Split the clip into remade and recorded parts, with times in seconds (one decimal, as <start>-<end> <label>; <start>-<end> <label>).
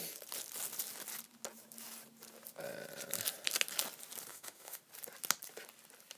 0.0-4.3 recorded; 4.3-4.8 remade; 4.8-6.2 recorded